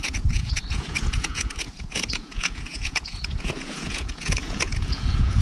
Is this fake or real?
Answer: fake